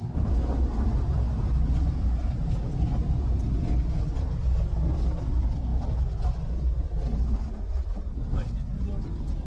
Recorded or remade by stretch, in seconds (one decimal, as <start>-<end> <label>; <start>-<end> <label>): 0.0-9.5 recorded